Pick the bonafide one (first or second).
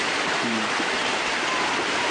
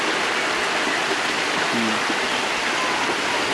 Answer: second